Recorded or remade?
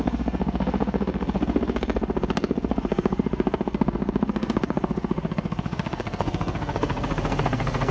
remade